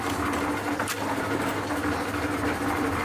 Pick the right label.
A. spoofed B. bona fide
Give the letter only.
B